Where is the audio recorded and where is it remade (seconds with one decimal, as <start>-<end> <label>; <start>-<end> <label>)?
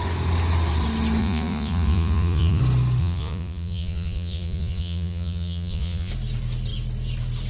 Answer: 0.0-1.2 recorded; 1.2-2.6 remade; 2.6-3.0 recorded; 3.0-6.1 remade; 6.1-7.5 recorded